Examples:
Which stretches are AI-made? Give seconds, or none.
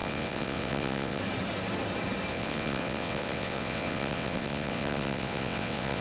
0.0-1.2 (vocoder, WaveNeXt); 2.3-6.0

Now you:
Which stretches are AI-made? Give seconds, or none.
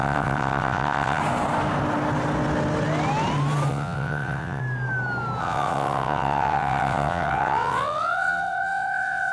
0.0-1.2 (vocoder, WaveNeXt); 3.7-4.6; 5.4-9.3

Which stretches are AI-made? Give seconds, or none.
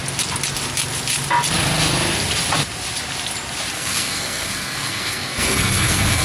3.7-6.2 (codec, SNAC)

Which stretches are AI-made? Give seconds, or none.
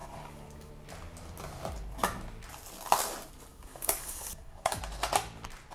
0.0-0.7 (codec, DAC); 3.5-4.8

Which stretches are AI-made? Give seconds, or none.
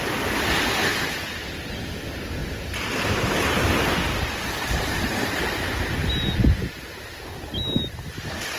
0.9-1.4 (vocoder, BigVGAN v2)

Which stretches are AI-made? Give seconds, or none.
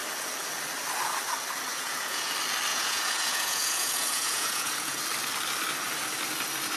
1.7-2.3 (vocoder, Vocos); 2.7-5.0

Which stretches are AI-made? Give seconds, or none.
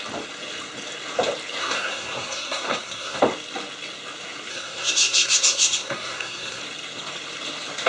1.6-3.2 (codec, SNAC); 4.5-6.6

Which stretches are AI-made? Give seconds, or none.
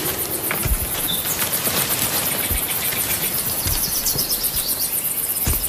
0.0-0.6 (vocoder, BigVGAN v2); 1.1-5.7